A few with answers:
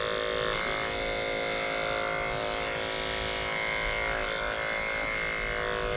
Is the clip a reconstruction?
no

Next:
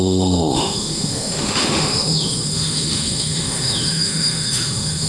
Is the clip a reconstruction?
yes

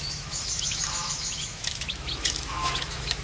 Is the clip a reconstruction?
yes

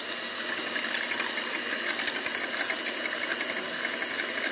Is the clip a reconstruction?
no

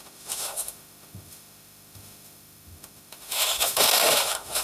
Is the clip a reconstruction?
yes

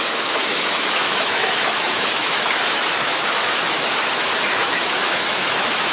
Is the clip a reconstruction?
yes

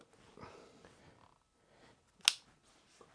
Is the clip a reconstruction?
no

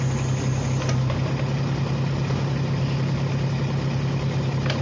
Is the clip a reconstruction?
no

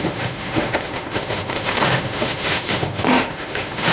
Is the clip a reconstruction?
yes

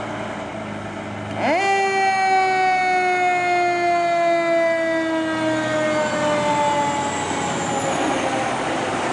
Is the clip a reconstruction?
no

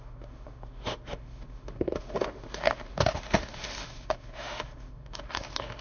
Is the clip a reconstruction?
yes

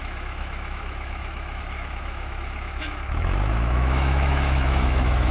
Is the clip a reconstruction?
yes